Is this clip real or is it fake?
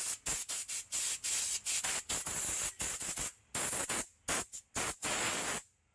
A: real